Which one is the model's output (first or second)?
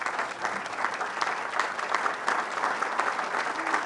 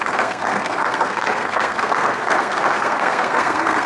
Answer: second